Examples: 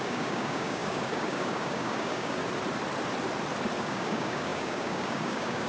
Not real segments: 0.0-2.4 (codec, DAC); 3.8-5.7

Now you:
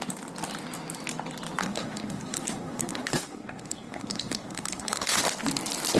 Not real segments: 1.6-5.2 (codec, SNAC)

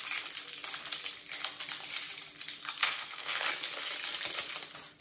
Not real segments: 2.8-3.4 (codec, SNAC)

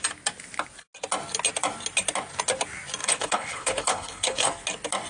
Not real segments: 3.0-4.5 (codec, HILCodec)